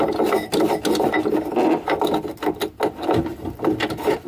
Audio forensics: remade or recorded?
recorded